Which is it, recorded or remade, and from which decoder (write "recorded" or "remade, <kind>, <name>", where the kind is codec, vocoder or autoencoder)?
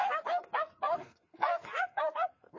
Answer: remade, codec, SNAC